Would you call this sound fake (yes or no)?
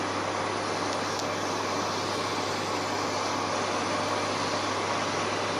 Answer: no